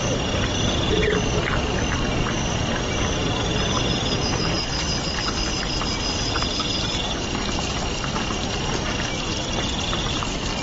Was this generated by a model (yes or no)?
no